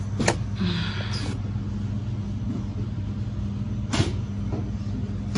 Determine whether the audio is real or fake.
real